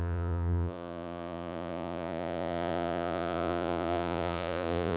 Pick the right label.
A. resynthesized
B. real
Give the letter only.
A